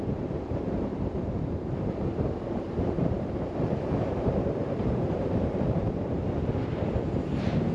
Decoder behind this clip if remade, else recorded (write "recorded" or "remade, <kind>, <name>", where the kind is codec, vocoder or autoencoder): remade, vocoder, BigVGAN v2